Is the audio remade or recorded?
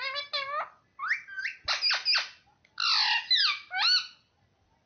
recorded